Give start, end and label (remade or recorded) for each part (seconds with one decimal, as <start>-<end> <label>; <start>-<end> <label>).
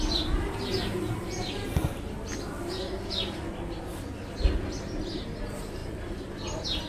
0.0-6.9 recorded